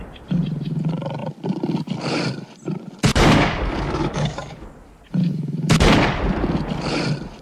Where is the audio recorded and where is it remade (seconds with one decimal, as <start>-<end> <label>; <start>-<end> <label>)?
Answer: 0.0-3.1 recorded; 3.1-4.7 remade; 4.7-5.2 recorded; 5.2-5.9 remade; 5.9-7.4 recorded